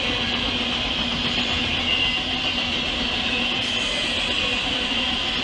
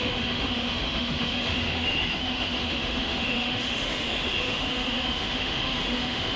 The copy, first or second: second